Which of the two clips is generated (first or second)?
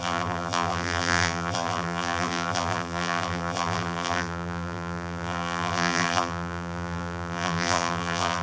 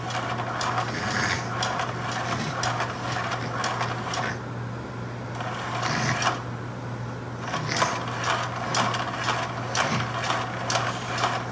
first